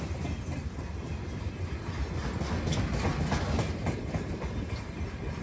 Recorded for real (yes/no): yes